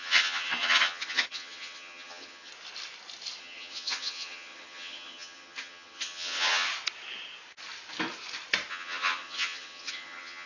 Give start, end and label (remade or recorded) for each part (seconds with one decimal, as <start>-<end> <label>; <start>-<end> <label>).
0.0-2.5 remade; 2.5-3.4 recorded; 3.4-6.7 remade; 6.7-8.7 recorded; 8.7-10.5 remade